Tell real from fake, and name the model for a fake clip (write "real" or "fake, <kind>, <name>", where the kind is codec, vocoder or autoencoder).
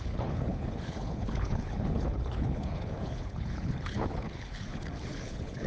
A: fake, codec, HILCodec